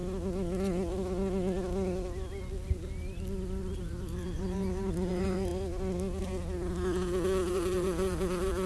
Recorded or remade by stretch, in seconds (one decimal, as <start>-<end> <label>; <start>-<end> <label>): 0.0-3.8 recorded; 3.8-5.5 remade; 5.5-7.5 recorded; 7.5-8.7 remade